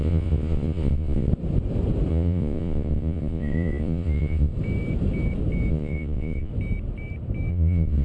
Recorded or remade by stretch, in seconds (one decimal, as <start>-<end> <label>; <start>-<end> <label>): 0.0-1.3 remade; 1.3-2.1 recorded; 2.1-4.5 remade; 4.5-5.7 recorded; 5.7-6.5 remade; 6.5-7.5 recorded; 7.5-8.0 remade